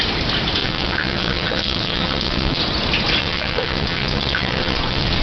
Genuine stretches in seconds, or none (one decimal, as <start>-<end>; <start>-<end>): 0.0-0.6; 2.6-3.2